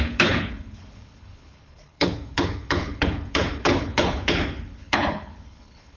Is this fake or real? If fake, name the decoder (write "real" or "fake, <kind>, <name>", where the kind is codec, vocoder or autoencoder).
fake, codec, HILCodec